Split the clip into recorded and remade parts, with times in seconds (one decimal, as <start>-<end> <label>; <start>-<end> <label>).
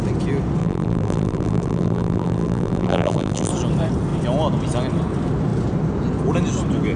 0.0-0.6 recorded; 0.6-3.5 remade; 3.5-7.0 recorded